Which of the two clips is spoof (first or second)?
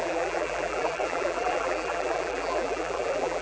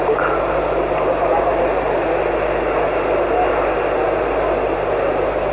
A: first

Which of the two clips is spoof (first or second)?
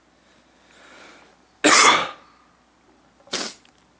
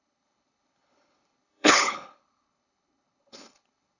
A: second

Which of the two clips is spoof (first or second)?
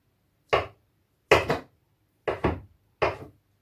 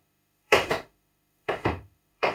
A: second